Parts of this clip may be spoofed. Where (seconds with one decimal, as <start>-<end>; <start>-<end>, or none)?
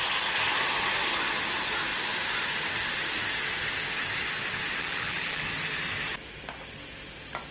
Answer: 4.8-5.4